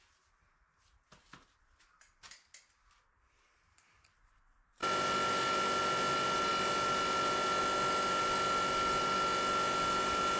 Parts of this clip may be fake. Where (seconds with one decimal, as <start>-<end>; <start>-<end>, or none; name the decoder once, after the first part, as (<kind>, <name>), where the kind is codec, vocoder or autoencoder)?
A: none